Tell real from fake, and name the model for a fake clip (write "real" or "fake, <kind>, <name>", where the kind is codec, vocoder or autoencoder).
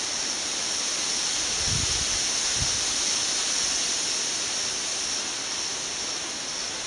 real